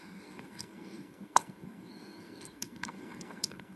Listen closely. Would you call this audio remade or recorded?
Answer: remade